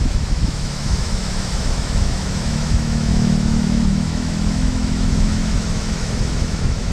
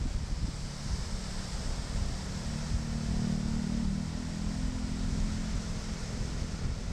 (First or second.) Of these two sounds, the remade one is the first